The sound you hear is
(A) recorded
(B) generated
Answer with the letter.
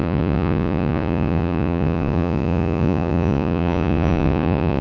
B